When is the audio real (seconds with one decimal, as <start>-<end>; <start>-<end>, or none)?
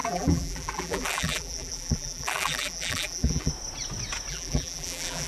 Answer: 3.5-4.3